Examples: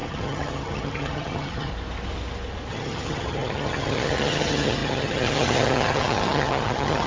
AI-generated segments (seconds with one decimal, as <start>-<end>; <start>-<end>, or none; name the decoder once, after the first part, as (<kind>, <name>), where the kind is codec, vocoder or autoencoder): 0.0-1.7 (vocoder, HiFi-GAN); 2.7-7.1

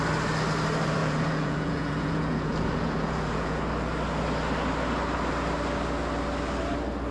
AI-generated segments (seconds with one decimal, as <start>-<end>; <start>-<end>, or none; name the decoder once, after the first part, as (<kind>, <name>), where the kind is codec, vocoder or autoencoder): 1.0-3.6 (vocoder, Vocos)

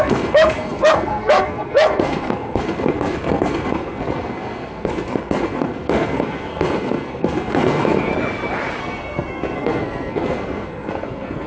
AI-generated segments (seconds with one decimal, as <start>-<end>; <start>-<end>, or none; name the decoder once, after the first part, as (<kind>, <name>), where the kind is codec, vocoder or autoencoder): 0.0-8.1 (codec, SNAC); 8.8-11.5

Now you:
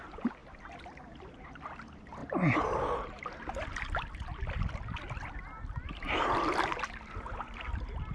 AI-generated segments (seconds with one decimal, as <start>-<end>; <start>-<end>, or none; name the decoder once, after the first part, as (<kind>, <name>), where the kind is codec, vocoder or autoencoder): none

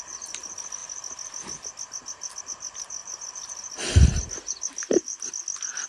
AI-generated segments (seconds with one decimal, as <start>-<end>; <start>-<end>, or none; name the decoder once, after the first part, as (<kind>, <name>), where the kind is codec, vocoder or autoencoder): none

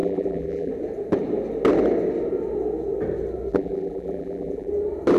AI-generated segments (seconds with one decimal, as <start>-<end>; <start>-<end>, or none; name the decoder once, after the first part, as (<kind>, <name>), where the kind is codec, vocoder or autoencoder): 0.0-0.7 (vocoder, BigVGAN v2); 3.5-4.7

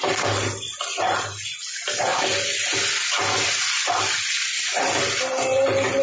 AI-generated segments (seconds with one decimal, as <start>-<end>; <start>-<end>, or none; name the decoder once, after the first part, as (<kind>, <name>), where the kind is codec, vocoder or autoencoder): none

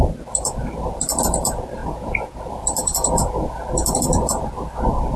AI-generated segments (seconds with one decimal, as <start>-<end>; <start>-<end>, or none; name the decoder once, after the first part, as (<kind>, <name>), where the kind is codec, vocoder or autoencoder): 1.8-2.4 (vocoder, Vocos); 2.8-3.6